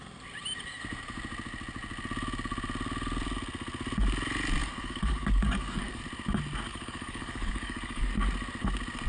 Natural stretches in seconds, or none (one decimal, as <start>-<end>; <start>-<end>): 0.0-4.6; 6.0-6.7; 8.1-9.1